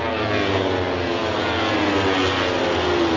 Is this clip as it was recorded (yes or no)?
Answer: yes